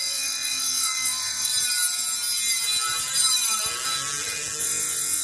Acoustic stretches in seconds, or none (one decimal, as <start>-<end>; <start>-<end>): 1.5-4.6